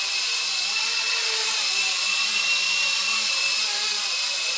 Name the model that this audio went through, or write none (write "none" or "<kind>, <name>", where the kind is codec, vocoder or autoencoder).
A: vocoder, BigVGAN v2